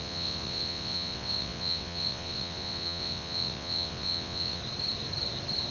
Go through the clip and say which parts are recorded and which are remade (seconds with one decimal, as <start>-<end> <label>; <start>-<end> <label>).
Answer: 0.0-4.6 remade; 4.6-5.7 recorded